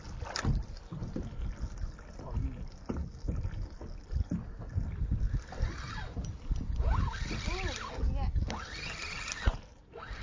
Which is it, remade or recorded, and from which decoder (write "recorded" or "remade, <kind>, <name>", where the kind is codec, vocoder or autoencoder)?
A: recorded